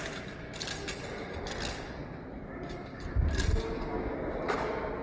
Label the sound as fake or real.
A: real